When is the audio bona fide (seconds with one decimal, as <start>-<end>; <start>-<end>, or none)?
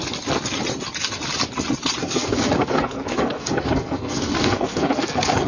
0.0-2.0